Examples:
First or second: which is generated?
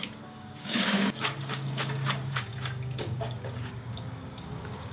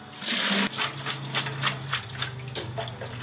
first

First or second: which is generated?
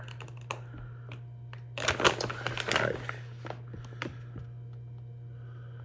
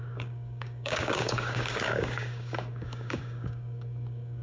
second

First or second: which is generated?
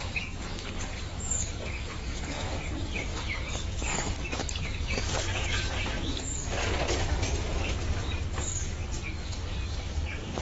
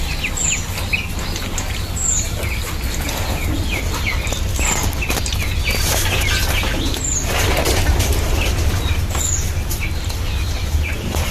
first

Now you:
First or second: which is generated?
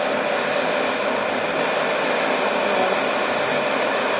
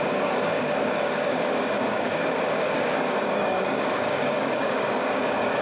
second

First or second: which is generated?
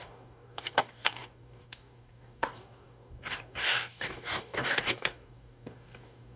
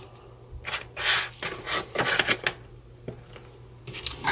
first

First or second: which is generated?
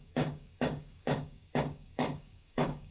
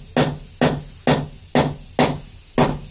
first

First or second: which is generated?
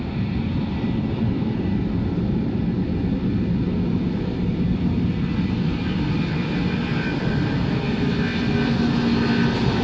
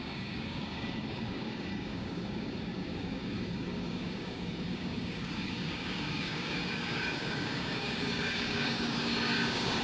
second